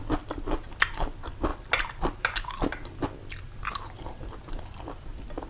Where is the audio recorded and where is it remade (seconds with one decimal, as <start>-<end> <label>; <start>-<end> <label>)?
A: 0.0-5.5 recorded